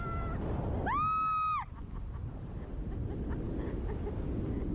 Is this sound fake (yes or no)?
no